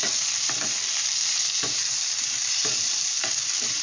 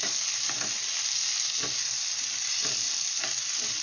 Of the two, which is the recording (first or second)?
second